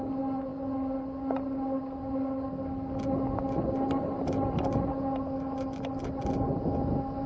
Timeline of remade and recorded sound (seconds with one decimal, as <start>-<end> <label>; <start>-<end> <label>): 0.0-7.3 recorded